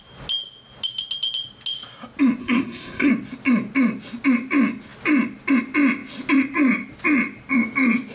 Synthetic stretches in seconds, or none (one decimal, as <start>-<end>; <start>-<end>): 2.4-3.1

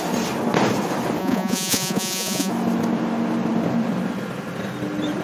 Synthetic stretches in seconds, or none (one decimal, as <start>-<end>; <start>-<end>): 1.2-2.5

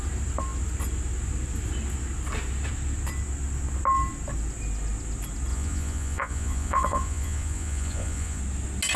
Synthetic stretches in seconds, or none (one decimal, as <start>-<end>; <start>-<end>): 5.5-8.4

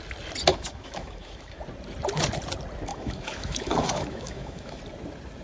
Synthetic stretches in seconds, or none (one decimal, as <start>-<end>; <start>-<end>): 0.5-1.6; 2.9-4.8

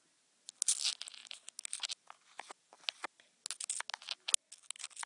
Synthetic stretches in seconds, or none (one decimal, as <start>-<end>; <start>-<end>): none

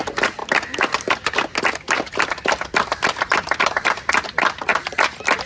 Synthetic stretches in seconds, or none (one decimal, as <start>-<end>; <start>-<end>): 0.4-3.7; 4.7-5.5